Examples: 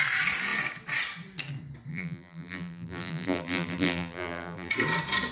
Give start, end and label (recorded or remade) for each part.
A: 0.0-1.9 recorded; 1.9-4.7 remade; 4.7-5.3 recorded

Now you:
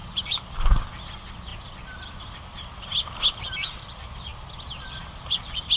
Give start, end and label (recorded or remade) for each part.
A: 0.0-1.5 remade; 1.5-2.2 recorded; 2.2-4.3 remade; 4.3-5.0 recorded; 5.0-5.8 remade

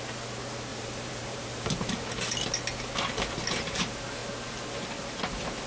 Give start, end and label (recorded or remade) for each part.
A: 0.0-0.7 recorded; 0.7-2.1 remade; 2.1-5.7 recorded

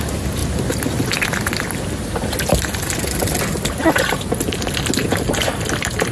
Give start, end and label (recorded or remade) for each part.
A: 0.0-6.1 recorded

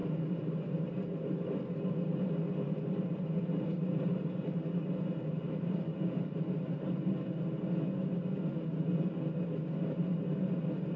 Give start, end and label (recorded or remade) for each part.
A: 0.0-2.5 remade; 2.5-3.7 recorded; 3.7-7.1 remade; 7.1-11.0 recorded

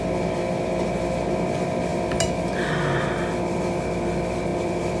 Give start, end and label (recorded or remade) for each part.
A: 0.0-4.5 recorded; 4.5-5.0 remade